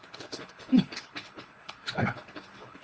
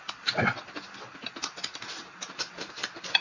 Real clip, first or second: second